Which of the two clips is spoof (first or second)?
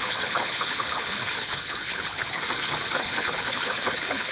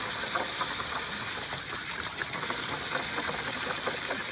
first